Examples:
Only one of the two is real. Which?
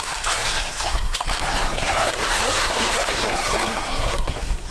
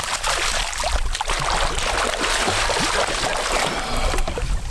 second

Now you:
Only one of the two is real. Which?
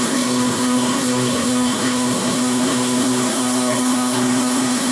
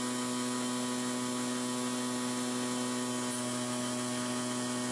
second